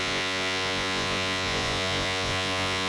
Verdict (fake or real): fake